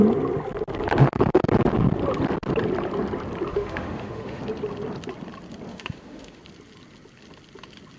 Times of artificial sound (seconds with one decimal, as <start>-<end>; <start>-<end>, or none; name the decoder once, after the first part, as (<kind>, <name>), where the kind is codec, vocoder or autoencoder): 1.0-1.5 (autoencoder, DAC-VAE); 3.5-4.4; 5.7-6.4